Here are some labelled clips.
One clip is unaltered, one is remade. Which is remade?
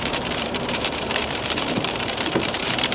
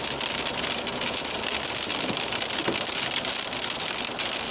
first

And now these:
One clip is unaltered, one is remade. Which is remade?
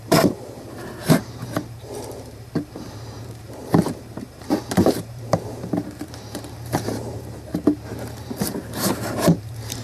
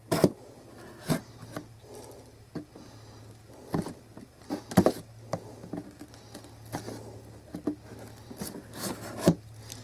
first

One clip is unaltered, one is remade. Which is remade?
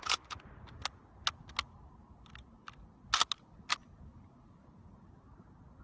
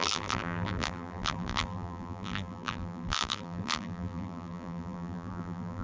second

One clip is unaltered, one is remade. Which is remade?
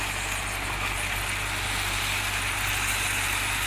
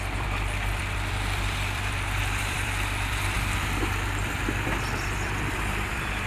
second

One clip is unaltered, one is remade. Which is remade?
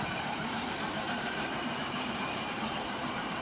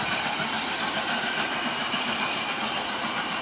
first